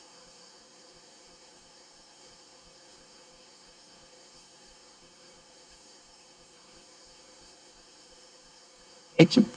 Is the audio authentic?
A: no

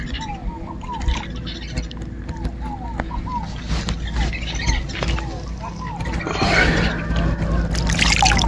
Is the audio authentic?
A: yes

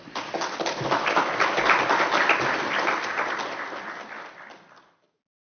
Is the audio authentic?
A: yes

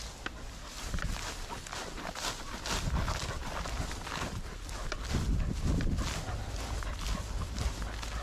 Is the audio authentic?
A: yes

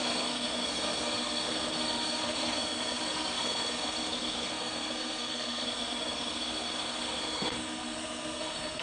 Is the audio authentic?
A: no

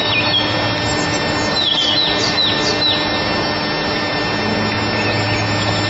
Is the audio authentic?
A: yes